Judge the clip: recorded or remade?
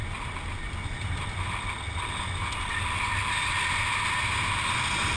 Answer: recorded